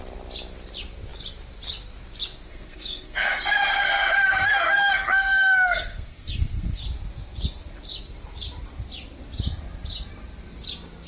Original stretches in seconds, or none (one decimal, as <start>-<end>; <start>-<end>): 0.0-2.5; 6.8-11.1